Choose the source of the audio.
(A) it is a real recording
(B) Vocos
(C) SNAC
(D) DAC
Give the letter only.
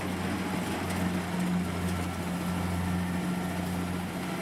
A